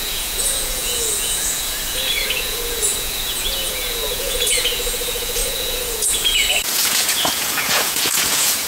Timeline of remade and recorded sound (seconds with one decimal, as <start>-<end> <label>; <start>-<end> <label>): 0.0-8.7 remade